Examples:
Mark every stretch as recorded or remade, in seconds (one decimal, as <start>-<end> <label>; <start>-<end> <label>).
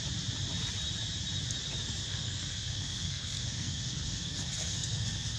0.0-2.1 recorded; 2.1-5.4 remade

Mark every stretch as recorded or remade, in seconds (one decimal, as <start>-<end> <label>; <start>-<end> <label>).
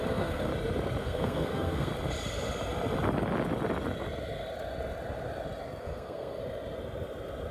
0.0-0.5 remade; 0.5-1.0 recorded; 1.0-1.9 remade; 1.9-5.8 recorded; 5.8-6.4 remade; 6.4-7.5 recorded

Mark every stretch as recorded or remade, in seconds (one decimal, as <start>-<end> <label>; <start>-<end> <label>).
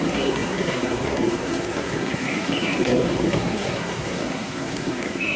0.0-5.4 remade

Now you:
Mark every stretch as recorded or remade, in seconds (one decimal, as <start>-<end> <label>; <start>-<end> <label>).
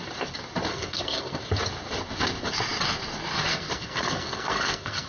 0.0-0.7 recorded; 0.7-1.4 remade; 1.4-3.5 recorded; 3.5-5.1 remade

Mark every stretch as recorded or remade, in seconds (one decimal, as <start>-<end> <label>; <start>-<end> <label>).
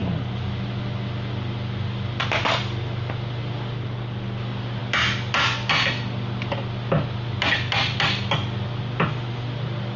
0.0-10.0 recorded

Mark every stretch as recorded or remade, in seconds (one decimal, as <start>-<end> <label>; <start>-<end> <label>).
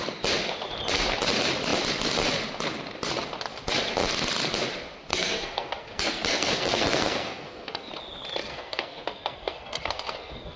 0.0-5.1 recorded; 5.1-7.9 remade; 7.9-8.4 recorded; 8.4-10.6 remade